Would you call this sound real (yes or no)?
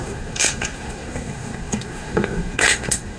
no